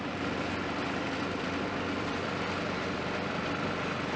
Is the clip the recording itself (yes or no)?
no